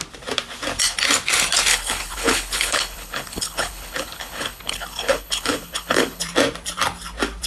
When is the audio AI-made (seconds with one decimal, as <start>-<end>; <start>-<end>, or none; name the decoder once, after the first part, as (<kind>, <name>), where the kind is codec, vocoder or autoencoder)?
1.7-6.2 (codec, HILCodec)